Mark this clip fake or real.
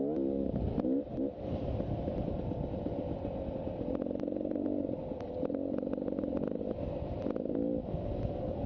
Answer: real